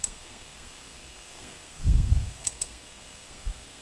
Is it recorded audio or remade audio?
remade